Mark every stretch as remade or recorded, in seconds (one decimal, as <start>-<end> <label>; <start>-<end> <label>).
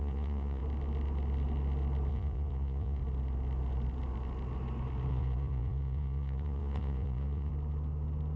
0.0-0.6 remade; 0.6-2.1 recorded; 2.1-3.0 remade; 3.0-5.1 recorded; 5.1-7.5 remade; 7.5-8.4 recorded